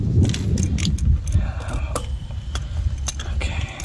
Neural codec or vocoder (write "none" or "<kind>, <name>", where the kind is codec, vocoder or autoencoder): none